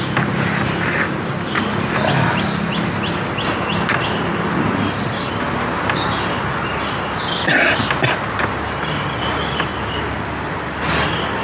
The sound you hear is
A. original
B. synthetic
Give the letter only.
A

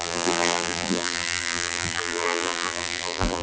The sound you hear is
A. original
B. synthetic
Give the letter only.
B